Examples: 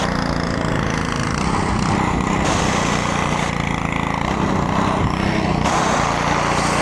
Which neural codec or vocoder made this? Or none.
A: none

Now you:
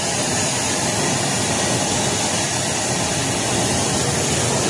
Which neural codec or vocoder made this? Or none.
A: none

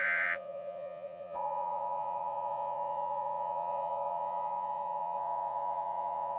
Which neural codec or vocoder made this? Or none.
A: vocoder, Vocos